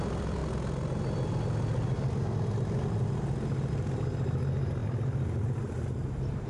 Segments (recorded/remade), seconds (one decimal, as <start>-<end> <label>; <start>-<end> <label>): 0.0-6.5 recorded